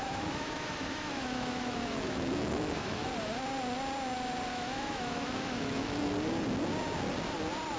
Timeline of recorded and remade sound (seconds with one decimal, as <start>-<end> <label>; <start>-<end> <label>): 0.0-3.1 remade; 3.1-4.5 recorded; 4.5-6.1 remade; 6.1-7.8 recorded